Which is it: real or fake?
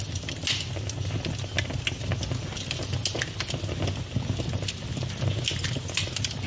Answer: real